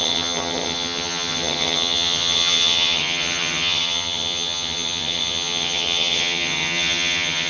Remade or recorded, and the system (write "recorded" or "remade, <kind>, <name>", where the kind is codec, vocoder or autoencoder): remade, vocoder, HiFi-GAN